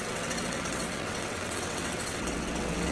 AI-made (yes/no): yes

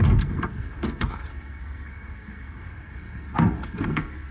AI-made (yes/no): yes